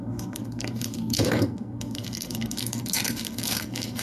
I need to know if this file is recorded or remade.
remade